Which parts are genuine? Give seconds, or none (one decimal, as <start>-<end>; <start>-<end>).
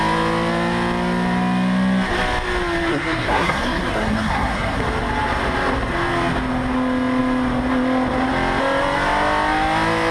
0.0-2.9; 4.8-10.1